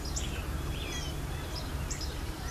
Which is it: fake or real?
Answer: fake